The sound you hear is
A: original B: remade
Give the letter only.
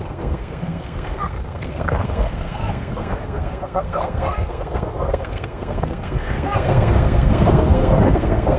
B